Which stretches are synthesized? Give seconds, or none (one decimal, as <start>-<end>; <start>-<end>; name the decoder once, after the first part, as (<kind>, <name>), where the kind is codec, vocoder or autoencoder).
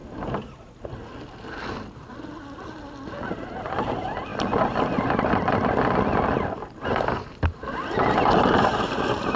4.3-7.7 (vocoder, BigVGAN v2); 8.7-9.4